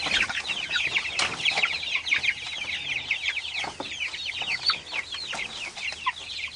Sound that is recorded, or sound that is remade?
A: recorded